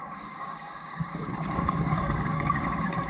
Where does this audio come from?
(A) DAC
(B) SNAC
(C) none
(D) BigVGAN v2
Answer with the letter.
A